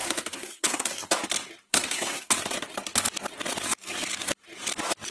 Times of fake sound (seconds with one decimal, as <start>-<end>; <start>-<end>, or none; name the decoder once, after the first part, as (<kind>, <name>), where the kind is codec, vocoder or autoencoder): 0.0-1.1 (codec, SNAC); 1.7-2.3